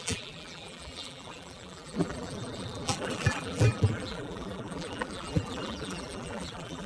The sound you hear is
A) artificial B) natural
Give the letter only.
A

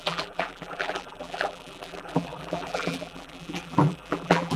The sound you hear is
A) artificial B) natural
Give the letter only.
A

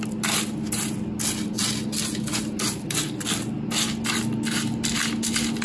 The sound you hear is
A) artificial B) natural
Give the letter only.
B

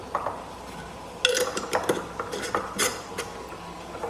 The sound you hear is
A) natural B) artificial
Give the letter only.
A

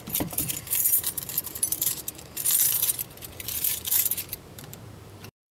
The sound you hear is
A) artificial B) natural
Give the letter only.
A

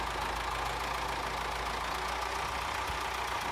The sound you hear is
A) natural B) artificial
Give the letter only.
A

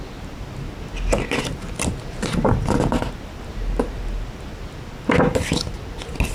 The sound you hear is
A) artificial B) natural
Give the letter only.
B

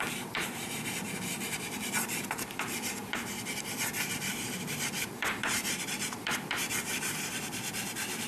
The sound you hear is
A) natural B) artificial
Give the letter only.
B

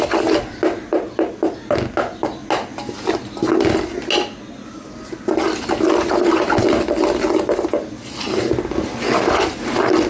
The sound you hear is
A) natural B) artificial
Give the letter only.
A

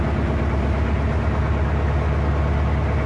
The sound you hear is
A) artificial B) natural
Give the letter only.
B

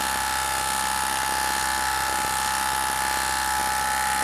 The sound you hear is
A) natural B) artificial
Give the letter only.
A